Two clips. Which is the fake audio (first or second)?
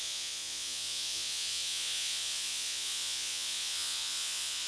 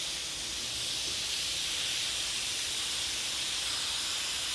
first